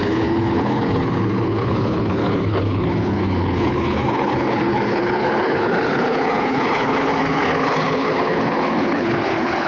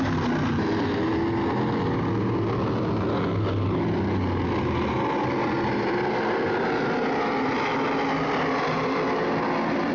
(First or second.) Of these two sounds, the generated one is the first